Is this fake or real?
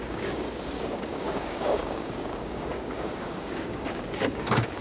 fake